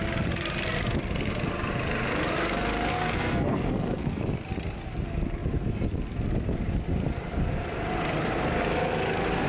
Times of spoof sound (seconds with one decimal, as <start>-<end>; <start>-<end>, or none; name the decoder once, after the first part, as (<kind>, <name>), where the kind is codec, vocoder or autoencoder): 2.9-4.2 (codec, SNAC)